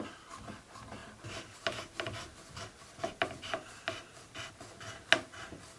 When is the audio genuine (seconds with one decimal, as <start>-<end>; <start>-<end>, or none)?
0.0-1.0; 4.5-5.8